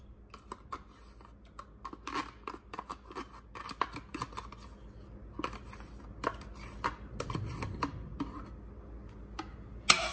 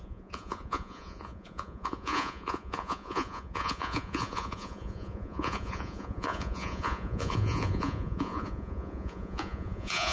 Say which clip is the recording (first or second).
first